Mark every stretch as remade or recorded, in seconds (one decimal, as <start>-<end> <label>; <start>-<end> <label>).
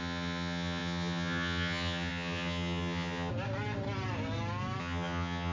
0.0-3.3 remade; 3.3-4.8 recorded; 4.8-5.5 remade